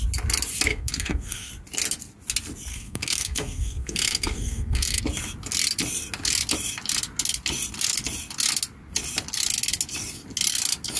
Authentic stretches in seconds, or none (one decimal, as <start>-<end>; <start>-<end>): 0.0-0.7; 1.5-2.7; 5.0-11.0

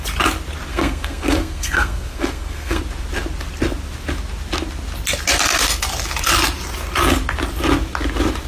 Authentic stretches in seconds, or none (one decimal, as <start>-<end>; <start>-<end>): 0.0-0.7; 2.8-8.5

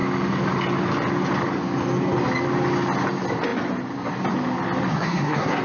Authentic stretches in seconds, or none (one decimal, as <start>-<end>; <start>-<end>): 0.0-4.9

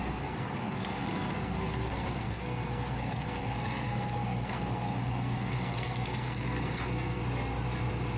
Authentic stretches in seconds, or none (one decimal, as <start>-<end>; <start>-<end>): 7.2-8.2

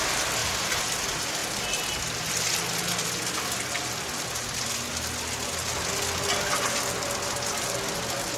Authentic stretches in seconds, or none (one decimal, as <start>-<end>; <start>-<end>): 0.0-8.4

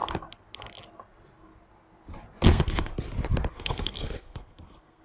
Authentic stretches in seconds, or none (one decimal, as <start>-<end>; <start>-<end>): 0.0-2.5; 2.9-3.5

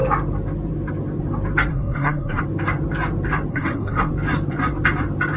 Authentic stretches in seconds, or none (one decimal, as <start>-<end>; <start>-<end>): 0.0-1.7; 2.4-3.5; 4.1-5.4